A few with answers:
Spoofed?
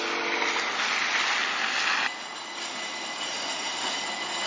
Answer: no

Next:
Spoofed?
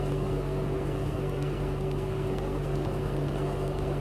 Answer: yes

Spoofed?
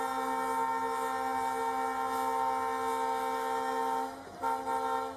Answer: no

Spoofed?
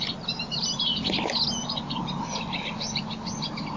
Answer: no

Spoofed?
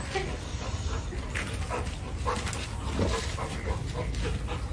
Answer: no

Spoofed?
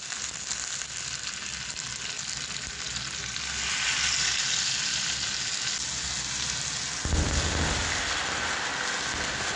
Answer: no